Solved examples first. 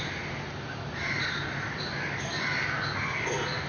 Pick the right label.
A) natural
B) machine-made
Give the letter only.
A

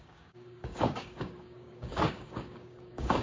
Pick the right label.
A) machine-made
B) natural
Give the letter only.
A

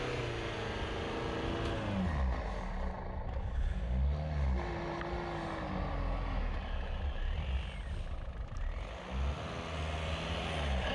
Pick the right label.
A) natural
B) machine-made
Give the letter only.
A